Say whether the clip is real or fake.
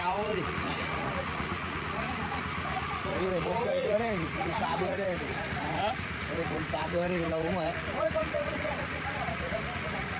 fake